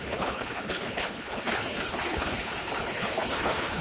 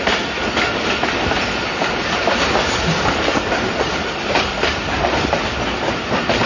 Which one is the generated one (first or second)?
first